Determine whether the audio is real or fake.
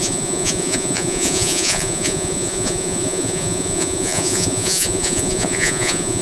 fake